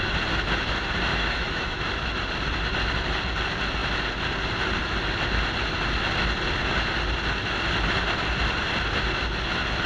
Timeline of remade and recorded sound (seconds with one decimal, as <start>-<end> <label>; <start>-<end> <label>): 0.0-1.1 recorded; 1.1-1.9 remade; 1.9-9.9 recorded